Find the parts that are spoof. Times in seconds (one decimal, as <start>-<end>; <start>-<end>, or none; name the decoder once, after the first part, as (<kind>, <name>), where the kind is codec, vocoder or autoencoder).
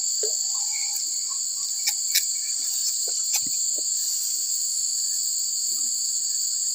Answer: 2.8-4.3 (vocoder, BigVGAN v2)